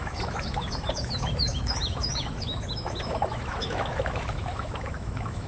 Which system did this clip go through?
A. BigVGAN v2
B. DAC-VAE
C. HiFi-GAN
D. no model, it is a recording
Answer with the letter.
B